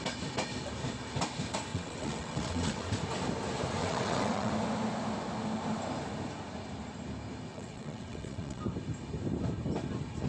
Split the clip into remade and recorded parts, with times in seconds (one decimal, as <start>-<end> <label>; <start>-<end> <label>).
0.0-1.7 recorded; 1.7-2.9 remade; 2.9-3.8 recorded; 3.8-4.5 remade; 4.5-7.5 recorded; 7.5-8.6 remade; 8.6-10.3 recorded